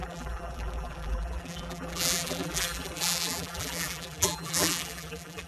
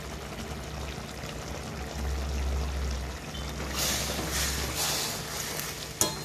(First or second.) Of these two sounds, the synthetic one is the first